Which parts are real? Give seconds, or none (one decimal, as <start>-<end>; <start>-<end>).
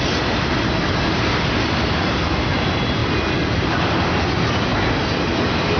0.0-5.8